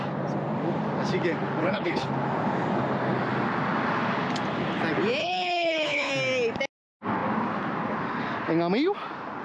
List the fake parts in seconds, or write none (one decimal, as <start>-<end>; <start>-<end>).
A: 1.6-2.1; 5.2-6.1